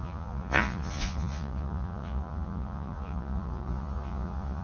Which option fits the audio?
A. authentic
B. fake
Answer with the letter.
B